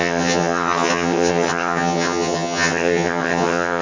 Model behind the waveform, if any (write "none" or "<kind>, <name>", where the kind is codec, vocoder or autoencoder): vocoder, HiFi-GAN